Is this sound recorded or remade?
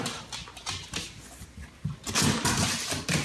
recorded